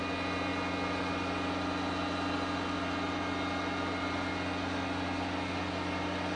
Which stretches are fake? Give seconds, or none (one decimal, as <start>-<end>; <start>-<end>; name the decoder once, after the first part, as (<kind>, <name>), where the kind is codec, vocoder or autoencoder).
none